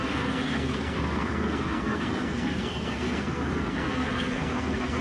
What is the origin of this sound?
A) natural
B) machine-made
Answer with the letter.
B